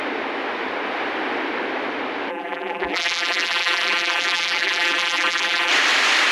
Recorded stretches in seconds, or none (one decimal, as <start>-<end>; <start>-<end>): 0.0-2.3; 5.7-6.3

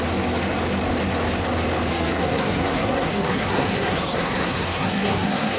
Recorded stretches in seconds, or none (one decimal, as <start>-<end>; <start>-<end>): 0.0-1.9

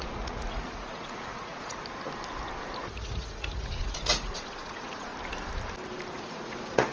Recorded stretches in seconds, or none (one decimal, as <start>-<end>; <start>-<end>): 1.8-2.8; 5.1-6.1